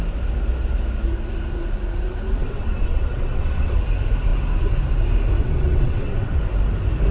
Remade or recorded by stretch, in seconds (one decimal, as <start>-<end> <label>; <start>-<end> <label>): 0.0-2.4 recorded; 2.4-3.8 remade; 3.8-5.4 recorded; 5.4-6.4 remade; 6.4-7.1 recorded